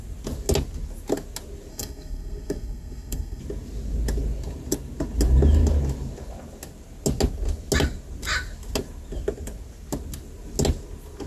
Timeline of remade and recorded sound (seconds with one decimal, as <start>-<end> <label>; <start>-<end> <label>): 0.0-1.7 recorded; 1.7-3.4 remade; 3.4-11.3 recorded